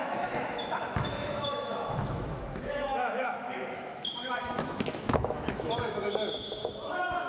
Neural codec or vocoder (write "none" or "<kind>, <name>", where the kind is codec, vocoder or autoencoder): autoencoder, DAC-VAE